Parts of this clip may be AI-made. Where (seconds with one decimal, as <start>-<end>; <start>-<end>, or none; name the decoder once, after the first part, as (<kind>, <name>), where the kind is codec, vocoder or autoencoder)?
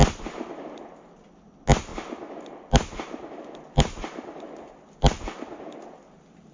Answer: none